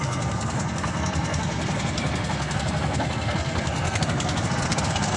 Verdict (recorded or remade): remade